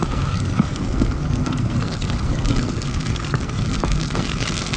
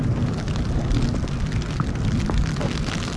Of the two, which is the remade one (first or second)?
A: first